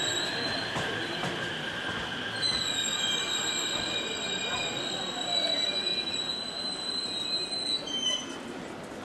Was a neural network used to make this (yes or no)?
no